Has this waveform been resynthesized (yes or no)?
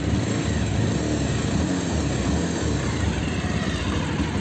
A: no